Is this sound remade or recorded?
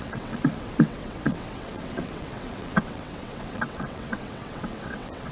remade